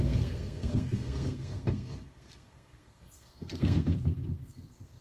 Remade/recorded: remade